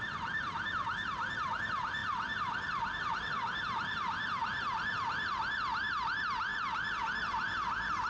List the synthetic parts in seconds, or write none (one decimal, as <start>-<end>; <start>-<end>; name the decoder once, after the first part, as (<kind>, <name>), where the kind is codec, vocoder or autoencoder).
none